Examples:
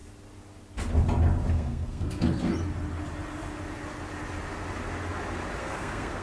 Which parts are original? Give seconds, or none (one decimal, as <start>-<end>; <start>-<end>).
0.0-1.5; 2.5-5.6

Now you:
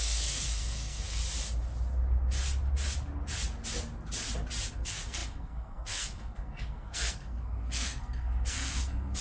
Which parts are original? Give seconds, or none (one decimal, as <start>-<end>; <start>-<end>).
1.2-4.7

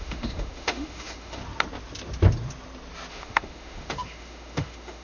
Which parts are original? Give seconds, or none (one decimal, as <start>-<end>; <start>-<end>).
1.4-3.1

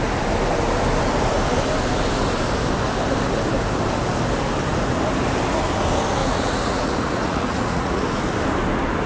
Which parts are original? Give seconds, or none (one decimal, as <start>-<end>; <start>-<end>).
0.0-6.2; 8.2-9.1

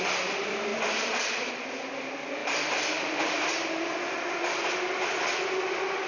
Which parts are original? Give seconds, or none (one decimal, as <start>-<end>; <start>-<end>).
0.0-6.1

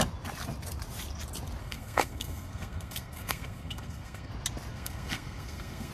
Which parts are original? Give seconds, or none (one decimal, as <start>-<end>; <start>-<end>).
0.0-1.6; 4.3-4.7